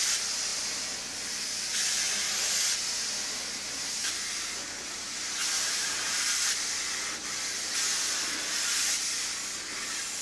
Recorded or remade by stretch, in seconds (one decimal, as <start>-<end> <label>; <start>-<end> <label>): 0.0-5.4 recorded; 5.4-6.6 remade; 6.6-10.2 recorded